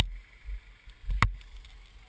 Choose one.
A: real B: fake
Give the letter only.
A